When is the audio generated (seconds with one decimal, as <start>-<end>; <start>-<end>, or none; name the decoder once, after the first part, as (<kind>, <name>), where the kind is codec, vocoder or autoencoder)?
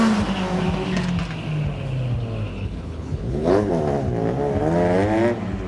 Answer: 2.5-3.7 (codec, HILCodec)